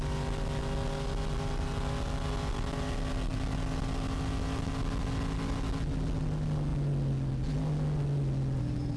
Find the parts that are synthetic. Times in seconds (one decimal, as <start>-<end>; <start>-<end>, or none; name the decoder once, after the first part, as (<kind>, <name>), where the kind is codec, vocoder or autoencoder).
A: none